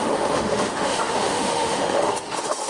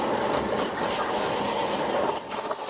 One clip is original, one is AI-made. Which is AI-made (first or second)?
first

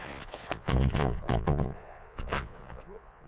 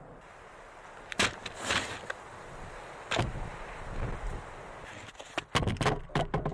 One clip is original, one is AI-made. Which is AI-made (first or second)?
first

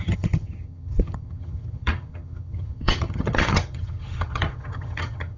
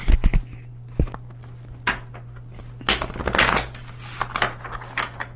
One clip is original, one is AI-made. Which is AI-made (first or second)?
first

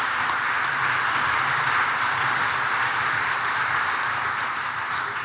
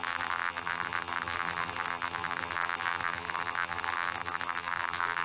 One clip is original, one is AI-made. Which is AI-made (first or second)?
second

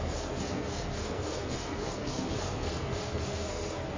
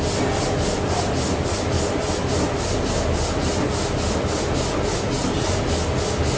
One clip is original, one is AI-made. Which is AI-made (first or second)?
first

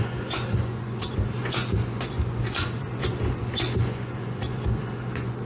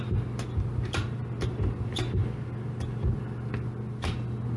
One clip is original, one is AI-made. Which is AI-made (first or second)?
first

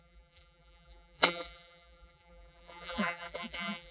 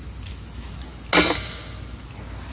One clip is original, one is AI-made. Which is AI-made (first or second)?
first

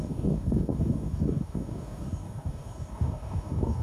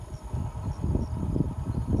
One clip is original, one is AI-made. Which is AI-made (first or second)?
first